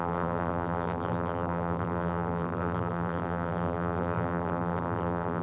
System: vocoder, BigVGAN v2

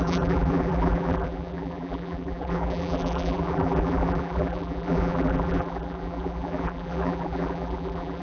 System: vocoder, BigVGAN v2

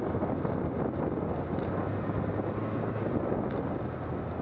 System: none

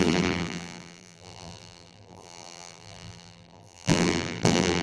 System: vocoder, BigVGAN v2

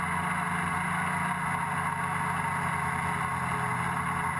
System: none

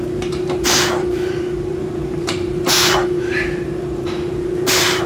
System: vocoder, BigVGAN v2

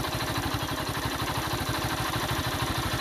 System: none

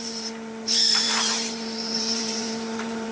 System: vocoder, BigVGAN v2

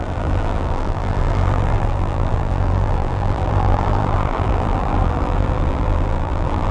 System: vocoder, BigVGAN v2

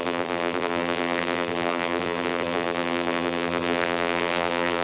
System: vocoder, BigVGAN v2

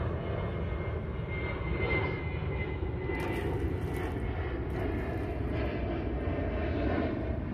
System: none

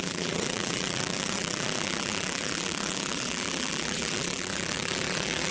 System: vocoder, BigVGAN v2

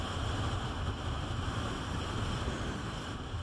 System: vocoder, BigVGAN v2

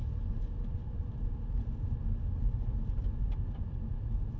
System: none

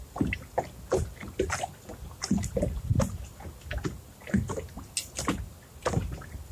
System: none